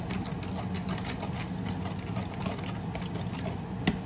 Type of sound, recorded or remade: recorded